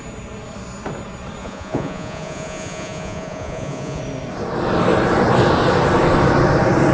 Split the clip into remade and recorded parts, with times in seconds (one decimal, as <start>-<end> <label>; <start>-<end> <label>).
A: 0.0-1.4 recorded; 1.4-4.0 remade; 4.0-6.9 recorded